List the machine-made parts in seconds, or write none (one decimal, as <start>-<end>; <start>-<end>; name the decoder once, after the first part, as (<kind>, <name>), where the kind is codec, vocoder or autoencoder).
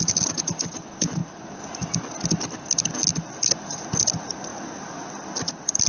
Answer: none